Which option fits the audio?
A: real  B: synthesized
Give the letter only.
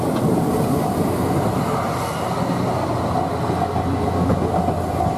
A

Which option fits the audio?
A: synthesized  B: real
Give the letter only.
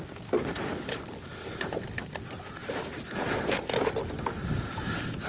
B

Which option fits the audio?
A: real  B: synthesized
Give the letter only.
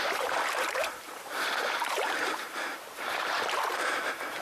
B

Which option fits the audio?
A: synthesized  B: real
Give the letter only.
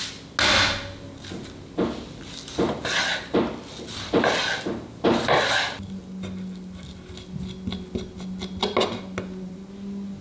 B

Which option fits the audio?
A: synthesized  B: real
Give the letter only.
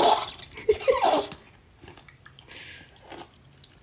B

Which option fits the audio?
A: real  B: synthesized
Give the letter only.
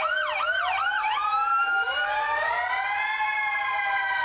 B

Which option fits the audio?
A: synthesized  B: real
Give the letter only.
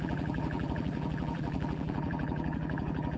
A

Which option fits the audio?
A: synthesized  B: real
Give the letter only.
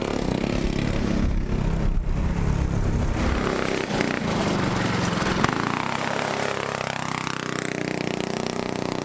B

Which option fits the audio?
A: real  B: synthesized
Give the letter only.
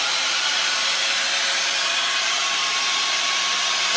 B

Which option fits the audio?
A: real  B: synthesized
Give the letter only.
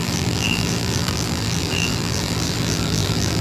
B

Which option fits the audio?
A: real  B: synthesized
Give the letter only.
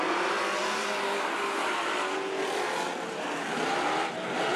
B